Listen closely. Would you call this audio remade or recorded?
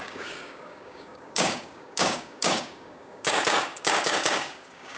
remade